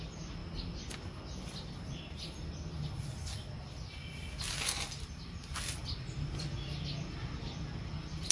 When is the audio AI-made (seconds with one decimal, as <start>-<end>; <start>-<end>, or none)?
none